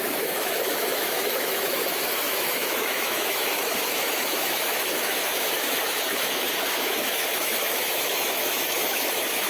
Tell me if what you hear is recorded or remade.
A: remade